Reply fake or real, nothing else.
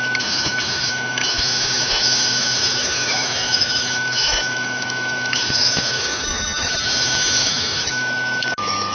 fake